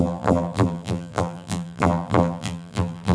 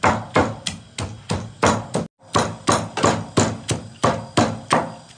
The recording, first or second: second